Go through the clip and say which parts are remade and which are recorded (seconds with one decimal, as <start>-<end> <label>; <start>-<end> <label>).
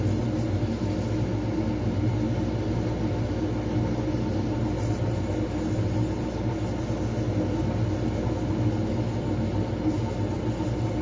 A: 0.0-11.0 recorded